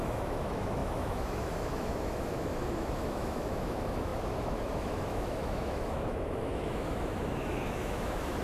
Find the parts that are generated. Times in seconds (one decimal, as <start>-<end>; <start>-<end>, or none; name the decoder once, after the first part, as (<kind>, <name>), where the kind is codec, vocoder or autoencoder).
0.0-8.4 (autoencoder, DAC-VAE)